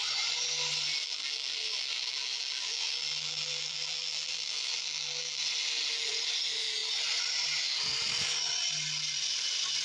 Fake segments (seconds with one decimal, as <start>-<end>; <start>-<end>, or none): 1.0-5.4